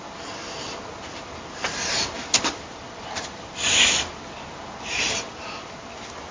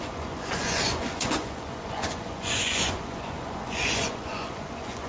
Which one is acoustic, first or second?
first